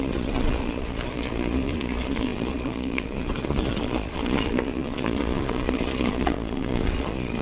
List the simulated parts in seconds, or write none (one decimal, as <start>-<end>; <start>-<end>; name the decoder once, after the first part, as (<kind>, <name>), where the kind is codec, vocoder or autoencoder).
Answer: 0.0-7.4 (vocoder, Vocos)